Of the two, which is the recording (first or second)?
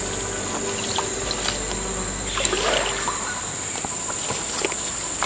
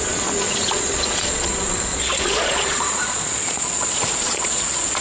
first